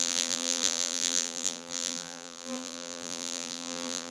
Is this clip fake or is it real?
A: fake